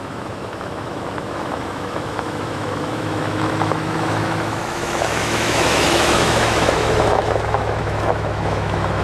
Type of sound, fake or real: fake